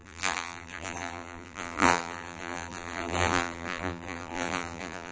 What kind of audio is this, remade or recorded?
remade